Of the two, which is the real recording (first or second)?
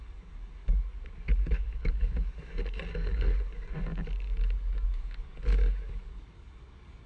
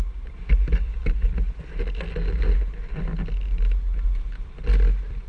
second